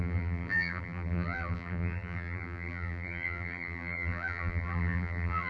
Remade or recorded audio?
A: remade